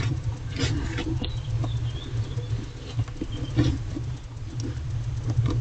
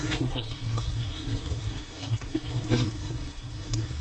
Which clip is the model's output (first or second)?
second